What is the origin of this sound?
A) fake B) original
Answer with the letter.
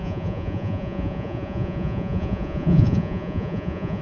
A